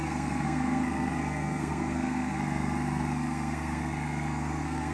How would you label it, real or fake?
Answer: fake